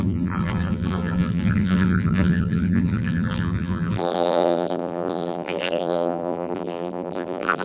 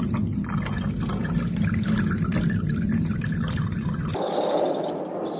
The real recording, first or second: second